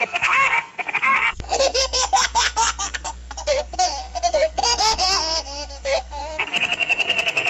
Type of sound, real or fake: fake